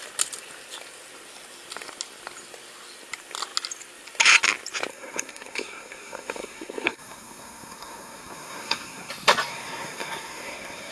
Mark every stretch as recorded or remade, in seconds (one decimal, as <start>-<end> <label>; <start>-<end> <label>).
0.0-4.9 recorded; 4.9-9.1 remade; 9.1-9.5 recorded; 9.5-10.9 remade